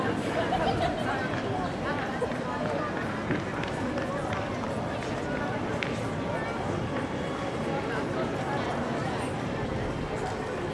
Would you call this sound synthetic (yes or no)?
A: no